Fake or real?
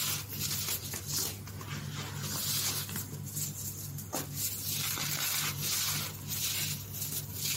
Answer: real